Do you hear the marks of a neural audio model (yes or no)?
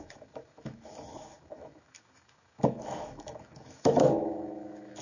yes